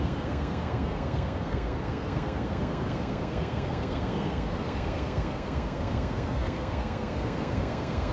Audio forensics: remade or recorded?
remade